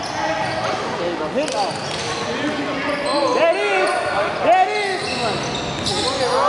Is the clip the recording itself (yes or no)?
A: yes